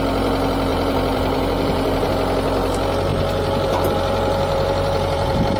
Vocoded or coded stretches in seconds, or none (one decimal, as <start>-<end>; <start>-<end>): 0.7-2.1; 3.1-5.6